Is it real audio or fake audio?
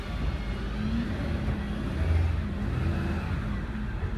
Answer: real